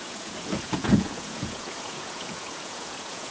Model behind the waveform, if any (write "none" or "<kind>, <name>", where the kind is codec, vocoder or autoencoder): vocoder, Vocos